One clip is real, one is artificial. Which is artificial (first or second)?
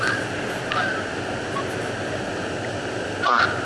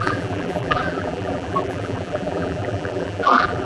second